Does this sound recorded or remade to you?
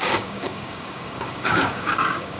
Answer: remade